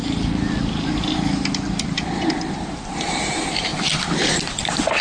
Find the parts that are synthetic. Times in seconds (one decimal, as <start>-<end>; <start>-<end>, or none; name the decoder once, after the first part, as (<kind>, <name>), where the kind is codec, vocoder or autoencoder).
3.0-3.7 (vocoder, BigVGAN v2); 4.3-5.0